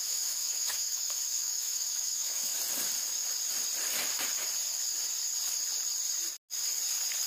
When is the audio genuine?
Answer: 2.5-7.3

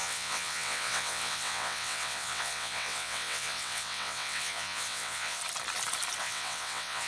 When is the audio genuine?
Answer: 5.4-6.2

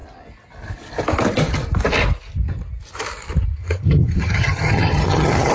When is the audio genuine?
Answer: 0.0-3.6

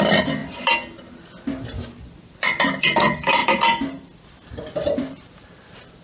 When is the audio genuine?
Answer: 0.4-2.8

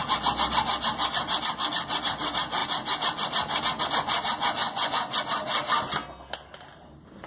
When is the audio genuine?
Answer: 0.0-4.6; 5.2-7.3